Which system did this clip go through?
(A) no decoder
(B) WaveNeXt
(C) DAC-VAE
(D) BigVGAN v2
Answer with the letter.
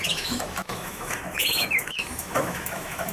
C